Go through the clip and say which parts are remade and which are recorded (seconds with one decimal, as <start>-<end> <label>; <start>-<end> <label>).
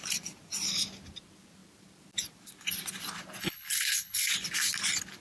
0.0-3.4 recorded; 3.4-4.3 remade; 4.3-5.2 recorded